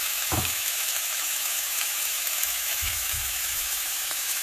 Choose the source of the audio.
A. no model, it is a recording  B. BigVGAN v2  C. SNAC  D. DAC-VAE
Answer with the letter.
D